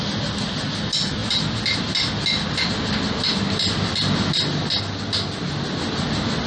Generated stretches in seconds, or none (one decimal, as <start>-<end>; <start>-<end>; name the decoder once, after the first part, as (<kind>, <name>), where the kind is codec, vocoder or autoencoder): none